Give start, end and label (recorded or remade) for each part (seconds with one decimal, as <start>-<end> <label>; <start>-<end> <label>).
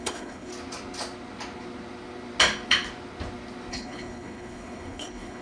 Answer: 0.0-0.5 remade; 0.5-3.7 recorded; 3.7-5.4 remade